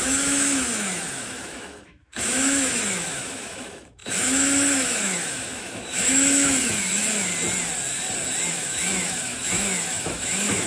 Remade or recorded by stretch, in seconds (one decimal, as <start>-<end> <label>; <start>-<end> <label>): 0.0-7.3 remade; 7.3-8.5 recorded; 8.5-10.7 remade